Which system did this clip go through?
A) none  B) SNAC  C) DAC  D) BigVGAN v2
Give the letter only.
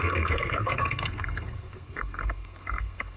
B